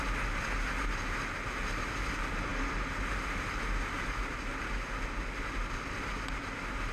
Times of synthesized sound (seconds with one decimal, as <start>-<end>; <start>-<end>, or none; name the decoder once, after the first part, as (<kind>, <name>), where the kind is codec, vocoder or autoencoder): none

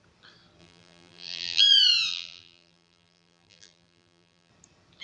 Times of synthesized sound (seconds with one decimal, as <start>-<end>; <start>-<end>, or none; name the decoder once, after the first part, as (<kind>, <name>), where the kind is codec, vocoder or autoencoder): 0.6-1.6 (vocoder, BigVGAN v2); 2.1-4.5

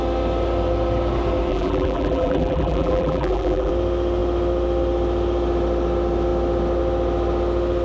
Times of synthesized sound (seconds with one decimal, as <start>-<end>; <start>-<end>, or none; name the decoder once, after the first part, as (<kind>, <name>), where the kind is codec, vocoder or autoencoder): 1.5-3.7 (vocoder, BigVGAN v2)

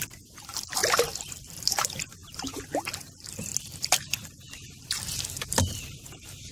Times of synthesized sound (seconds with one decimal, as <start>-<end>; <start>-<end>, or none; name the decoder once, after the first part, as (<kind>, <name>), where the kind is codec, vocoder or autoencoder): 0.0-0.8 (vocoder, BigVGAN v2); 1.4-3.5; 4.8-6.5

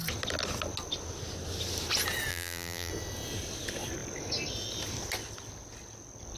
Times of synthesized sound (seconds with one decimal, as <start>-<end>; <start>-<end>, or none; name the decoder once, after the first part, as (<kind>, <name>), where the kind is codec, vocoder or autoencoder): 2.3-2.9 (vocoder, BigVGAN v2)

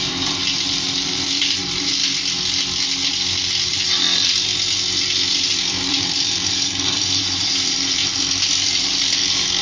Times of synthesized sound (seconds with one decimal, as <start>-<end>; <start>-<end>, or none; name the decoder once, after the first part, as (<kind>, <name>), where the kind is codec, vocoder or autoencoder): 0.0-2.0 (vocoder, BigVGAN v2); 3.7-4.5; 5.3-8.0; 8.8-9.6

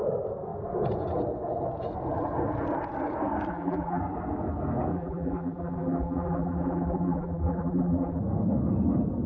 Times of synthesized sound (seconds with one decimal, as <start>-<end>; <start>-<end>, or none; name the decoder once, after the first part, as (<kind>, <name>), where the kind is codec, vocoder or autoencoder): 3.5-4.0 (vocoder, BigVGAN v2); 4.9-8.2